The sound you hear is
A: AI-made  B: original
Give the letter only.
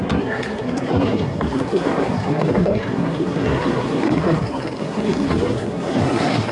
A